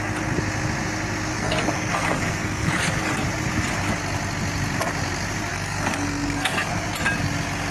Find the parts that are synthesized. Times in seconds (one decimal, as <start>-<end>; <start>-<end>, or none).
1.3-3.1; 5.5-6.7